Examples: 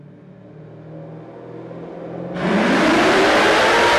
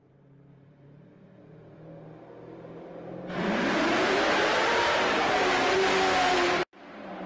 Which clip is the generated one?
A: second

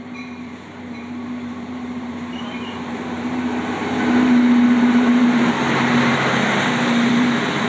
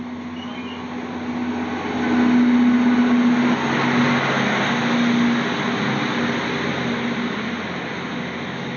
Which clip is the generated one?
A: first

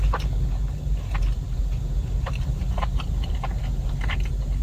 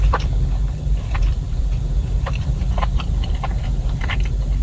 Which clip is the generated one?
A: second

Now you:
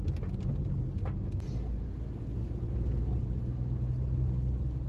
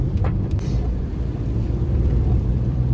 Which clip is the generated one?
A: second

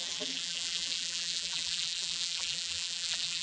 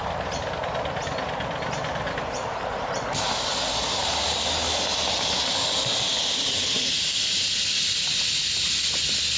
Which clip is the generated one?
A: first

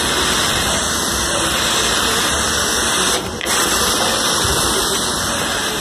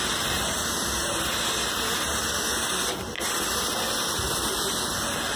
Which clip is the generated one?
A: first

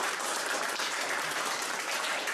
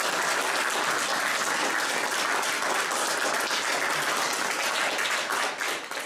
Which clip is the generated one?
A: first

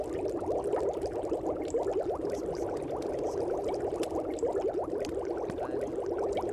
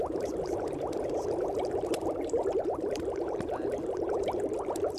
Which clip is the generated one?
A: second